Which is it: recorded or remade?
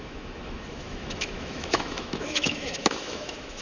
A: remade